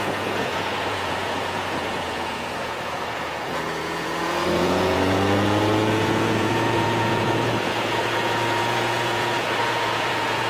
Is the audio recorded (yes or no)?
no